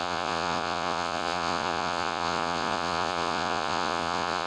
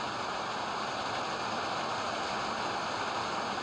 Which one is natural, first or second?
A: second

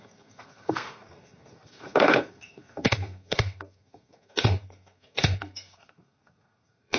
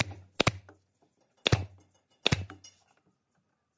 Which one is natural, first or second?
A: second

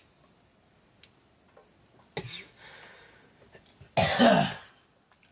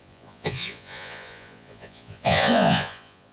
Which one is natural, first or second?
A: first